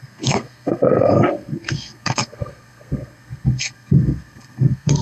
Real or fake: fake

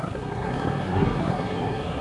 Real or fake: fake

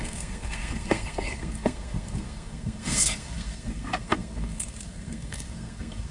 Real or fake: fake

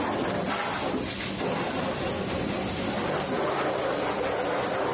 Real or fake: real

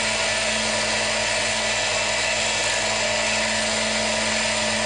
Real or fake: real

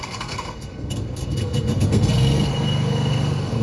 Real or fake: fake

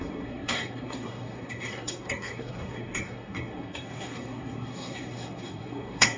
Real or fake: fake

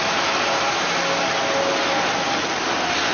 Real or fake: real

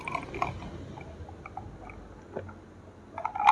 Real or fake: real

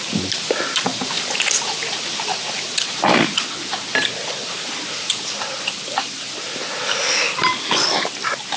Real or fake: real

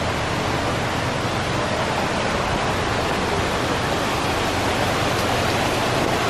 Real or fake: real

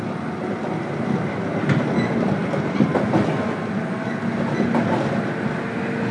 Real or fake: real